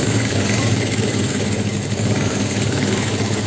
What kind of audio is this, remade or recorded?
remade